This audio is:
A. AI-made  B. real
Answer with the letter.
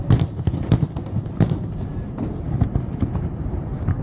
B